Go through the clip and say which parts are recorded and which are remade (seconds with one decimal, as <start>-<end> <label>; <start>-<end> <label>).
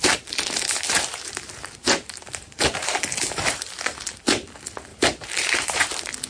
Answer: 0.0-3.0 remade; 3.0-4.9 recorded; 4.9-5.8 remade; 5.8-6.3 recorded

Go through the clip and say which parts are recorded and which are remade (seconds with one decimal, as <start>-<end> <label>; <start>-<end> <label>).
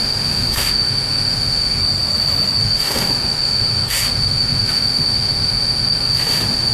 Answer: 0.0-1.8 remade; 1.8-2.6 recorded; 2.6-6.7 remade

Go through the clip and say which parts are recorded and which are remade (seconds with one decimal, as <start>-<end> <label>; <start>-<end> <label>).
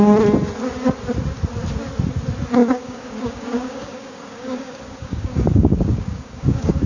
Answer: 0.0-2.6 recorded; 2.6-6.9 remade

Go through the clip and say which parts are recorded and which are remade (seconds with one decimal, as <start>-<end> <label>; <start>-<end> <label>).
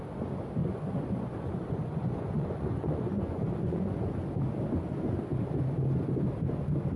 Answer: 0.0-0.6 recorded; 0.6-4.0 remade; 4.0-7.0 recorded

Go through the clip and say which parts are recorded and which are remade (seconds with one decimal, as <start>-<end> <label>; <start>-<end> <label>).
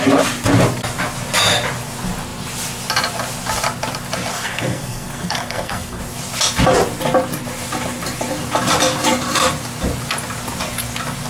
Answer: 0.0-4.3 recorded; 4.3-6.0 remade; 6.0-11.3 recorded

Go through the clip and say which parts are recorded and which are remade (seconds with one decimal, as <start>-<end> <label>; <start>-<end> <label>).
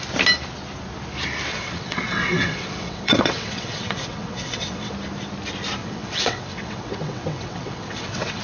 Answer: 0.0-1.5 recorded; 1.5-4.9 remade; 4.9-5.8 recorded; 5.8-8.4 remade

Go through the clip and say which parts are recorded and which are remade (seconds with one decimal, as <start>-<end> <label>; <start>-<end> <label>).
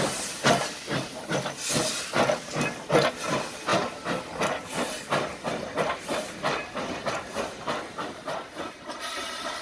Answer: 0.0-9.6 recorded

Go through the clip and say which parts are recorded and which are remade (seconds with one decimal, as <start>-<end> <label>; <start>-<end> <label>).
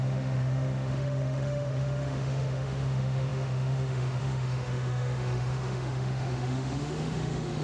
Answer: 0.0-7.6 remade